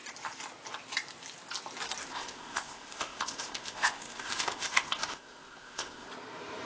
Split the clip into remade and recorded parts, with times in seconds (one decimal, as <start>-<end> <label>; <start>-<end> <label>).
0.0-2.1 recorded; 2.1-6.1 remade; 6.1-6.7 recorded

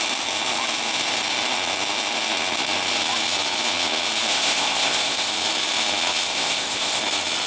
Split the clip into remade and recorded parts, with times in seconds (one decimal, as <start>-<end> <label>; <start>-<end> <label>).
0.0-4.3 recorded; 4.3-5.3 remade; 5.3-6.3 recorded; 6.3-7.0 remade; 7.0-7.5 recorded

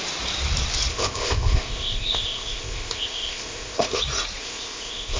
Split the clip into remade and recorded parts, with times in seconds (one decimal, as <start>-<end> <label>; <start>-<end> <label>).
0.0-0.9 recorded; 0.9-4.0 remade; 4.0-4.4 recorded; 4.4-5.2 remade